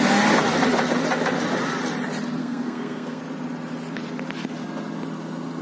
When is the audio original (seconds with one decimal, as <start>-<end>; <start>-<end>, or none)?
0.0-2.4; 3.2-5.6